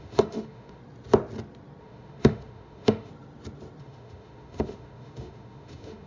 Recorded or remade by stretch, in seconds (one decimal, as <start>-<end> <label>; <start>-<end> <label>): 0.0-0.8 remade; 0.8-1.8 recorded; 1.8-3.1 remade; 3.1-3.8 recorded; 3.8-6.1 remade